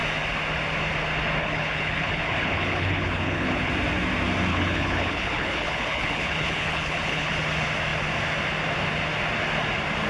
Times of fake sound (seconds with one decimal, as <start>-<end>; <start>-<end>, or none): 1.4-3.7; 4.5-7.3